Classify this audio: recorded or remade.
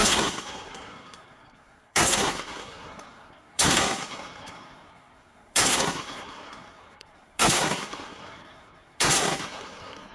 remade